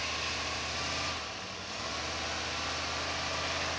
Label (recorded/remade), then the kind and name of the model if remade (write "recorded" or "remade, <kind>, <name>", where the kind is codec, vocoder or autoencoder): recorded